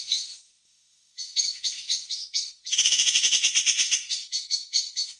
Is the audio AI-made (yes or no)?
yes